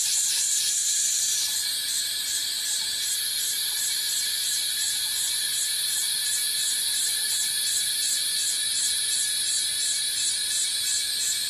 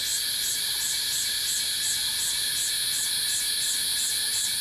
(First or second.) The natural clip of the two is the second